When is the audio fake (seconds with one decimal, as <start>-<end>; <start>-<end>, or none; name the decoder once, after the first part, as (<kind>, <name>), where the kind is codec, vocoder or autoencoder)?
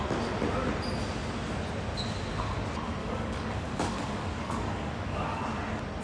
3.0-5.4 (codec, DAC)